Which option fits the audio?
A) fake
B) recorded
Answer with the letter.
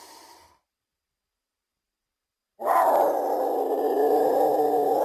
A